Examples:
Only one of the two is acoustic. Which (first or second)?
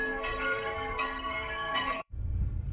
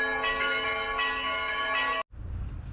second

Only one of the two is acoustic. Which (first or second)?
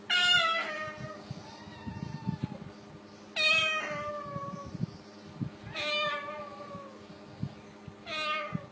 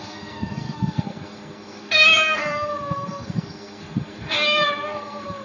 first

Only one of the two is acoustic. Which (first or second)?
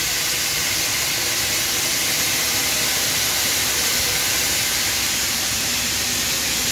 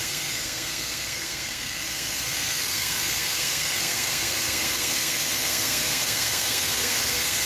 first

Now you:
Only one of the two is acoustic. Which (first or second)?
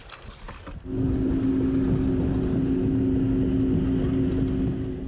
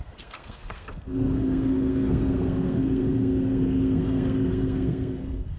first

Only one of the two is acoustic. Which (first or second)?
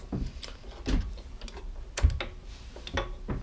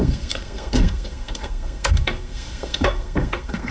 first